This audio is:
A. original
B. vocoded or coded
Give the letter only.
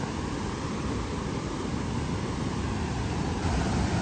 A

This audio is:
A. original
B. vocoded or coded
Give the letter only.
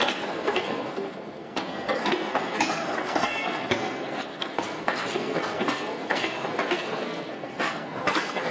B